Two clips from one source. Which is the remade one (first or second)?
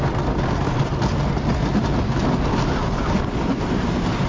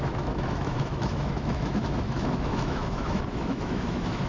second